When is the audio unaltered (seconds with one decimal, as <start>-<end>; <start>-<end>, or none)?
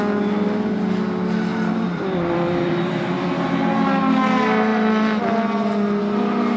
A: 0.0-1.5; 3.3-6.6